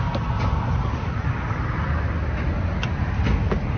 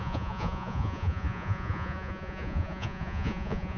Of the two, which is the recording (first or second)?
first